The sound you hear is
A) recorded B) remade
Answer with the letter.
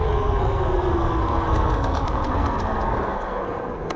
B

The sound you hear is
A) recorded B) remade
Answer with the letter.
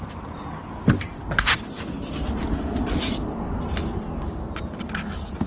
A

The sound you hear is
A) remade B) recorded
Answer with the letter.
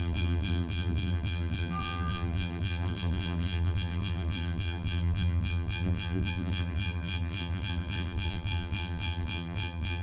A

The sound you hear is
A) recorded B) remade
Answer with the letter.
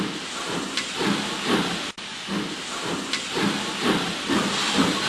A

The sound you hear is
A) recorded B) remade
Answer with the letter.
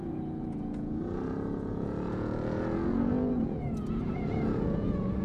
B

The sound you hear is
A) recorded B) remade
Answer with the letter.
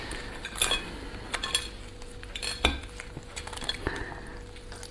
A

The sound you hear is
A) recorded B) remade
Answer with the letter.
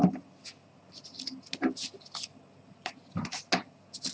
A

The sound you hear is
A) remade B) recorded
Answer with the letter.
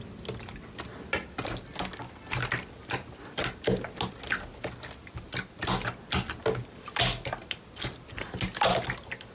B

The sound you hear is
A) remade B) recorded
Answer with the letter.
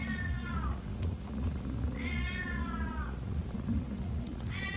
A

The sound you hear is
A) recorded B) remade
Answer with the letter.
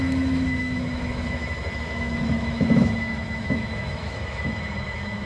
B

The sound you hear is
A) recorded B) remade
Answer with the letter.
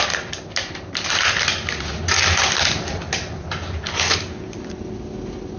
A